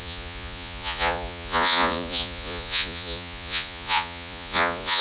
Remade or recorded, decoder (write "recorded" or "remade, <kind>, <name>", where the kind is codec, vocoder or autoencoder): remade, vocoder, Vocos